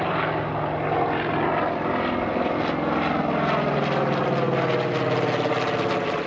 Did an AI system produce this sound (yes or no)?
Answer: no